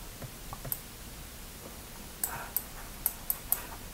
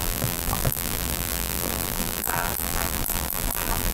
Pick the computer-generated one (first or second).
second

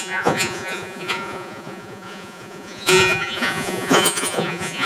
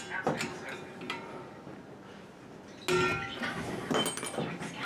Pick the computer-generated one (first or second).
first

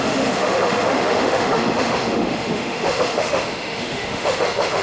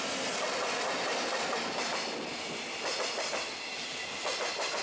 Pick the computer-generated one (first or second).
first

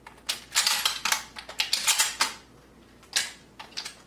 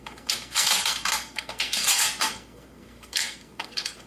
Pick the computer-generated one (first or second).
second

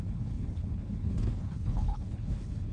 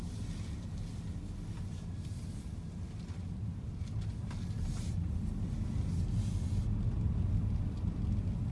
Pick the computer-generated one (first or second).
first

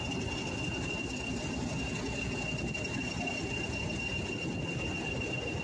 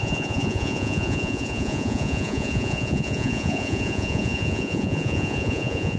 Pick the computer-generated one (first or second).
second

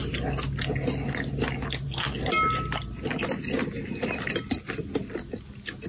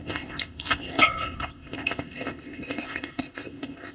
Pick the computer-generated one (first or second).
second